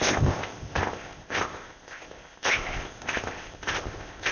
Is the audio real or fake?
fake